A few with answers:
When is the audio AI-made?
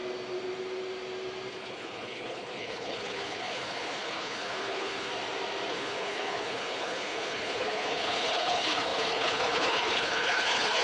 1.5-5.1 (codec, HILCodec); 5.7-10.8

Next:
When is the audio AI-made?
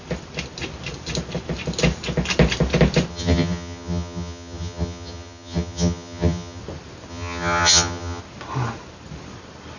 3.1-6.6 (vocoder, HiFi-GAN); 7.1-8.2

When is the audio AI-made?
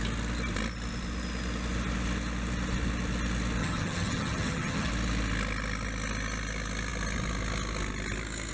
3.6-4.9 (vocoder, HiFi-GAN)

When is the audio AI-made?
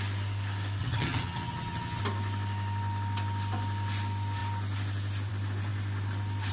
0.8-2.0 (vocoder, HiFi-GAN)